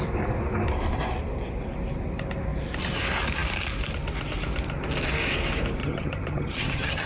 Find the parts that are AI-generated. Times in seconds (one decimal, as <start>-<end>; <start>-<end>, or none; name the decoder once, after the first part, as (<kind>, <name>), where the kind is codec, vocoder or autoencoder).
5.8-7.1 (vocoder, HiFi-GAN)